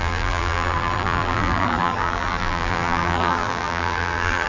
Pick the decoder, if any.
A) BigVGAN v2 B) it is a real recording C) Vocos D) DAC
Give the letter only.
A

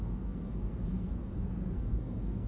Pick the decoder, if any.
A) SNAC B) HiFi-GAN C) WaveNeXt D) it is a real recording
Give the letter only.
A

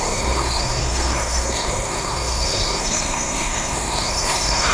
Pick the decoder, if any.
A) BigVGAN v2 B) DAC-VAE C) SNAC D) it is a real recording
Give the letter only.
C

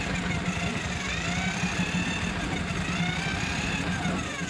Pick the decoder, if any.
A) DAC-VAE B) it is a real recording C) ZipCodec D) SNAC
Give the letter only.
B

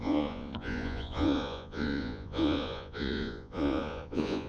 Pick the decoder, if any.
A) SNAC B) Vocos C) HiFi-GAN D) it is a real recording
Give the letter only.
B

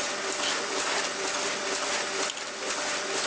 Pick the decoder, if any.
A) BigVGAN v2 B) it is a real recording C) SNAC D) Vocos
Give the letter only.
B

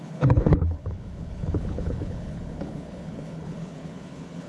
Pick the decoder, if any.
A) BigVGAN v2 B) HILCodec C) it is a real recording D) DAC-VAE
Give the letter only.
B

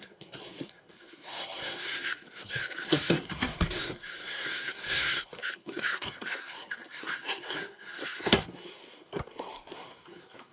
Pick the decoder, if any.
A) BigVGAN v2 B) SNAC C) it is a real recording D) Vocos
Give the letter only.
B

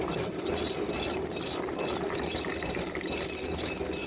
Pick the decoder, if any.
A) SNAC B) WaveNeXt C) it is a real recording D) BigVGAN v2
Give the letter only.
C